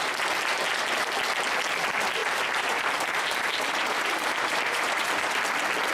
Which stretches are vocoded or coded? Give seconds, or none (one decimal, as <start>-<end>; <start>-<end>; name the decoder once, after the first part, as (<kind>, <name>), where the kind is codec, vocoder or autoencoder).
2.2-5.1 (vocoder, BigVGAN v2)